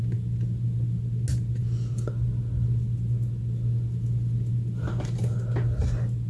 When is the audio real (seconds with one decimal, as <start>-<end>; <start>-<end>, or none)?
0.0-6.3